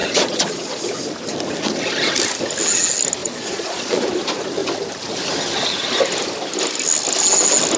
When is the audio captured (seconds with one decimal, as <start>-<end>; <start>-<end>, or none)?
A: 0.7-3.2; 4.0-7.8